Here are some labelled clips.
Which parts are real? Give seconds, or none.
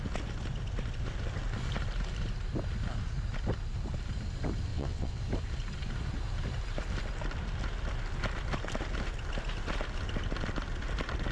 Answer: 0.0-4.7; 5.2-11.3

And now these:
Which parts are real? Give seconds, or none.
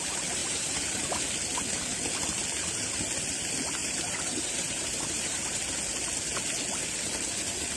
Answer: 0.0-0.4; 1.2-3.8; 5.4-7.8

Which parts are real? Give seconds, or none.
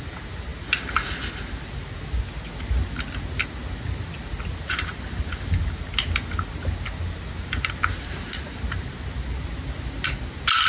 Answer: 0.0-10.7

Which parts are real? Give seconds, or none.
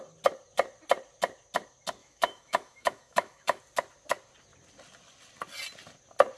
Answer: 0.0-2.0; 3.6-6.4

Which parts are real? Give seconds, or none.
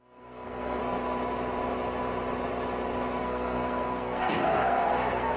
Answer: 0.8-3.2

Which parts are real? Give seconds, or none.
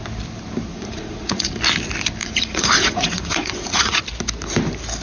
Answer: 0.0-0.7; 1.5-2.2; 4.0-5.0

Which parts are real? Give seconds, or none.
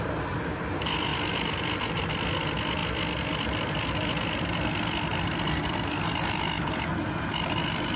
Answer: 0.0-8.0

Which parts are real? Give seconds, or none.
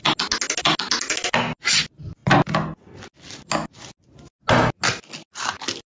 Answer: 0.0-5.9